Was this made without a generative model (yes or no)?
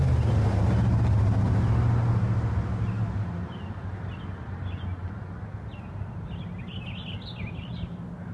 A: yes